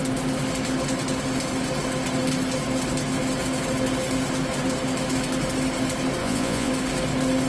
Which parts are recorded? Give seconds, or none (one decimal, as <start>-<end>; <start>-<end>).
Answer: 0.0-6.2; 6.7-7.5

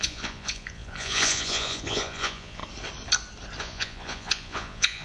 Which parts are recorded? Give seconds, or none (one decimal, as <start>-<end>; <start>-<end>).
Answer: 2.6-3.6

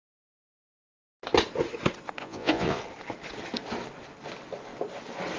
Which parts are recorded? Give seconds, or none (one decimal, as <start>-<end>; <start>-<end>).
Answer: 0.0-2.2; 2.8-5.4

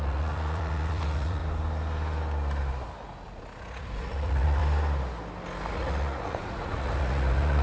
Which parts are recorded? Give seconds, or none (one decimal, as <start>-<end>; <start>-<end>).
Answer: 1.4-3.3; 4.6-5.7

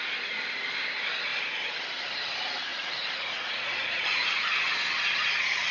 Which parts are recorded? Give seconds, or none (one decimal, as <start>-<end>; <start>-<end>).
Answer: 0.0-2.7; 4.7-5.7

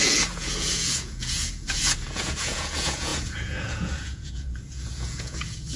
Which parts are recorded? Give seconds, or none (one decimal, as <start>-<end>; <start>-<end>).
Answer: none